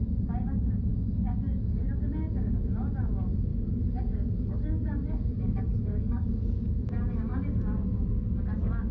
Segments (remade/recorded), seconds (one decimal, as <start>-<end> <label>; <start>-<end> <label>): 0.0-3.5 recorded; 3.5-6.4 remade; 6.4-8.9 recorded